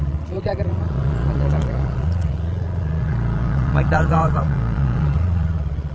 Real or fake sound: fake